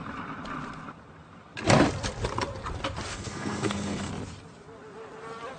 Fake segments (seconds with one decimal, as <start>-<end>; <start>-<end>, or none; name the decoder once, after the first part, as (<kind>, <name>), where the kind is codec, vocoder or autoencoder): 3.1-4.1 (codec, SNAC)